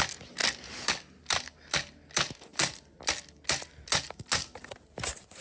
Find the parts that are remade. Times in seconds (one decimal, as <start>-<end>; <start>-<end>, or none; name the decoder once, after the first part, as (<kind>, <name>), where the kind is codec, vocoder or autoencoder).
none